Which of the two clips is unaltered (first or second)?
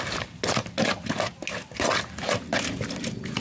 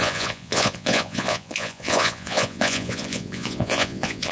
first